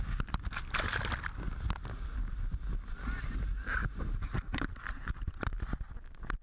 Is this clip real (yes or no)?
yes